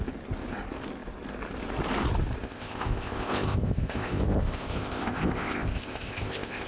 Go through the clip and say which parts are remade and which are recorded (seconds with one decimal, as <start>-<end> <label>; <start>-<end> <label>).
0.0-2.4 recorded; 2.4-6.7 remade